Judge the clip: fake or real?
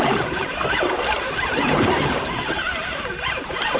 fake